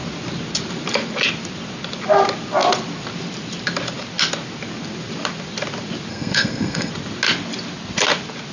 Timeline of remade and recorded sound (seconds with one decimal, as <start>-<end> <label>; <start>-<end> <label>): 0.0-6.1 recorded; 6.1-6.9 remade; 6.9-8.5 recorded